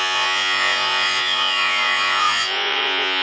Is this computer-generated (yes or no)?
yes